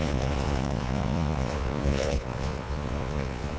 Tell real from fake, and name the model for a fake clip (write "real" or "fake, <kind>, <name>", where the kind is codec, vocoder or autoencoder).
fake, vocoder, Vocos